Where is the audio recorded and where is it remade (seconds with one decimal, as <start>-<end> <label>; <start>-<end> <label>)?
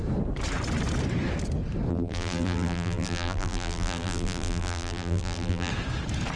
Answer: 0.0-1.9 recorded; 1.9-5.7 remade; 5.7-6.4 recorded